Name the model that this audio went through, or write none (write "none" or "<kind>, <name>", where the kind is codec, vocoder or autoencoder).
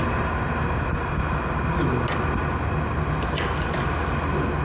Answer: none